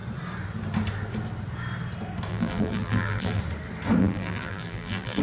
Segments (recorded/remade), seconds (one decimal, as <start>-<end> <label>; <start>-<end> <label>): 0.0-2.3 recorded; 2.3-3.4 remade; 3.4-4.0 recorded; 4.0-5.2 remade